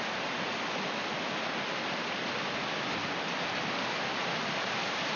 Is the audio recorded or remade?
recorded